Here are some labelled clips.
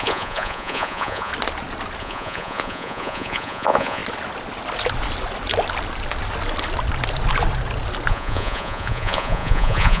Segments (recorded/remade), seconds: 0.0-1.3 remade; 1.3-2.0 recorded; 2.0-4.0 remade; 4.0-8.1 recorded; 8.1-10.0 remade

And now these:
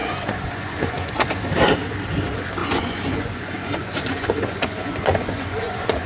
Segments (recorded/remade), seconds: 0.0-1.4 remade; 1.4-2.6 recorded; 2.6-6.1 remade

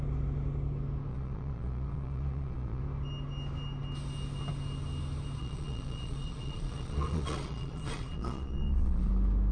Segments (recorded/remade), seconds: 0.0-1.1 recorded; 1.1-2.8 remade; 2.8-5.4 recorded; 5.4-9.1 remade; 9.1-9.5 recorded

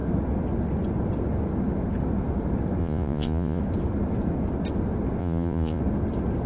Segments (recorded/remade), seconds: 0.0-2.8 recorded; 2.8-3.6 remade; 3.6-5.2 recorded; 5.2-5.8 remade; 5.8-6.5 recorded

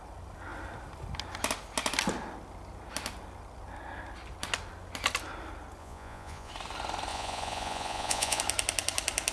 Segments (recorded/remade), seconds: 0.0-5.8 recorded; 5.8-6.5 remade; 6.5-7.1 recorded; 7.1-8.4 remade; 8.4-9.3 recorded

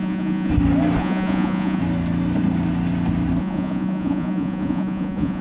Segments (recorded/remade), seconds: 0.0-0.5 remade; 0.5-1.0 recorded; 1.0-1.8 remade; 1.8-3.4 recorded; 3.4-5.4 remade